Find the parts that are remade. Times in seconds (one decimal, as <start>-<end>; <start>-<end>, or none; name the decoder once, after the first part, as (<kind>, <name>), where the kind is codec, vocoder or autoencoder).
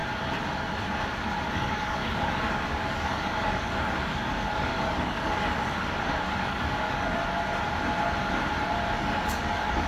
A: 1.5-7.2 (codec, DAC); 8.9-9.9